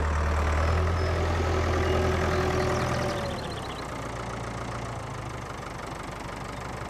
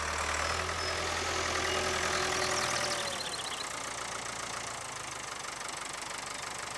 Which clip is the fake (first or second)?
first